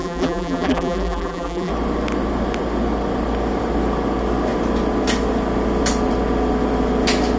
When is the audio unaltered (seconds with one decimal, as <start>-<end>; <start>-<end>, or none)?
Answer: 1.7-7.4